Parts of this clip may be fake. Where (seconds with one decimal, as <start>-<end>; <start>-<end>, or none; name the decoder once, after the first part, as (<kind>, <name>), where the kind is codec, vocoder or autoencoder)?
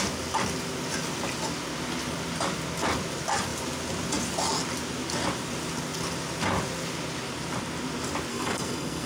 8.3-9.1 (codec, SNAC)